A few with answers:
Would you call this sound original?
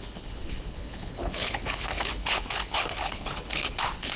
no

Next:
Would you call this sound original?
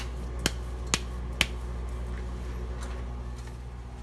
yes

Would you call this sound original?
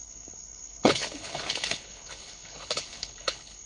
no